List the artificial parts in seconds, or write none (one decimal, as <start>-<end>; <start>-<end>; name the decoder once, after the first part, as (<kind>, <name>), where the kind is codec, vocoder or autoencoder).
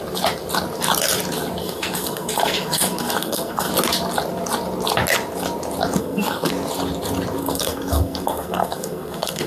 1.6-3.7 (codec, SNAC); 6.0-6.5; 7.4-9.5